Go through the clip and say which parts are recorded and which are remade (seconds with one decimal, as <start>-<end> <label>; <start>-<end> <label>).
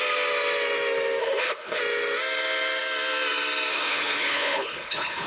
0.0-1.2 recorded; 1.2-1.8 remade; 1.8-3.7 recorded; 3.7-5.3 remade